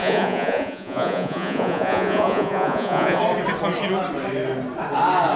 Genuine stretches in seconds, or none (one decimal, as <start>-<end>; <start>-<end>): 3.2-5.4